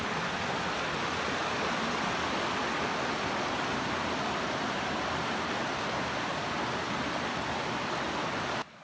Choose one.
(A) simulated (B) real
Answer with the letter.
B